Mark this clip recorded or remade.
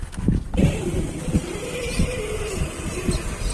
recorded